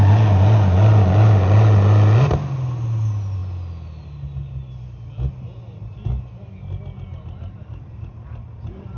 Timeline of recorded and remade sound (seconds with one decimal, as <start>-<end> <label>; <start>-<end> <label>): 0.0-9.0 recorded